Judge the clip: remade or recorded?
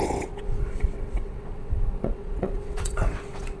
remade